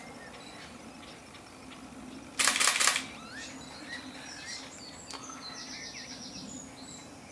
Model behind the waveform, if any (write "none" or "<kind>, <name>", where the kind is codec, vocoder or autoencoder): none